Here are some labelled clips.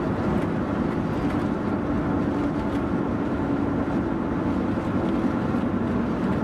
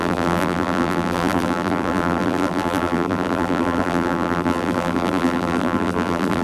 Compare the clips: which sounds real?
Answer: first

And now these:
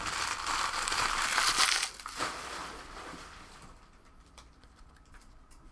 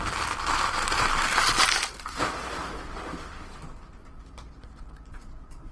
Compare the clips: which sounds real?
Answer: second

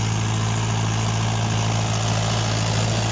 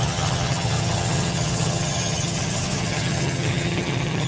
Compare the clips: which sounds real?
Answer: first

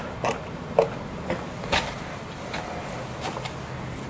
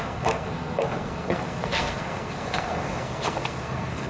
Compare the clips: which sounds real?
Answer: first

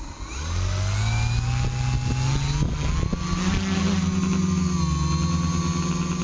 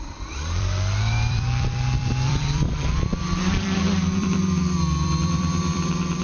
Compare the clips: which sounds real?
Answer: first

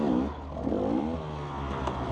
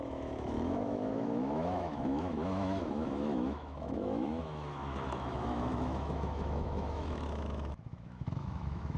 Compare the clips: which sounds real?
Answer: first